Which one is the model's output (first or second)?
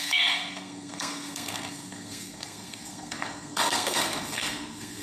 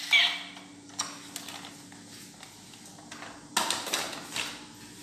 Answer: first